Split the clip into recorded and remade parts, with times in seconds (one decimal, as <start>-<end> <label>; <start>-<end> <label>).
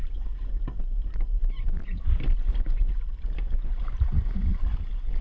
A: 0.0-5.2 recorded